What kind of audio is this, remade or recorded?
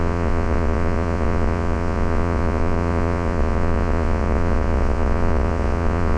remade